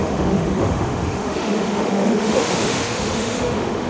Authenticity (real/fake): fake